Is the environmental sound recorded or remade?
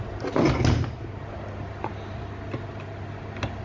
recorded